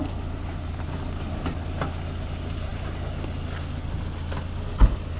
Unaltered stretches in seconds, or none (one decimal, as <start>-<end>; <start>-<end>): 0.0-5.2